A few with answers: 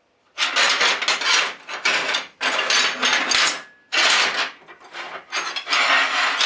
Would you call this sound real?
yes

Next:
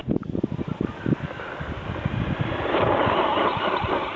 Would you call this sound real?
yes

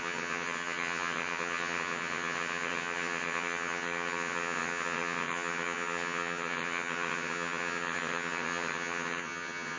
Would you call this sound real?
no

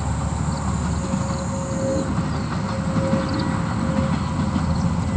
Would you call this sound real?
yes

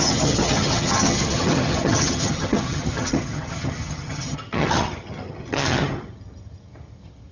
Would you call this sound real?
no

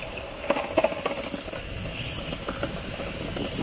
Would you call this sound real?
yes